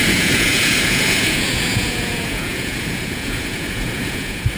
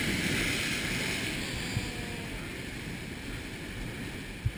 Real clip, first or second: second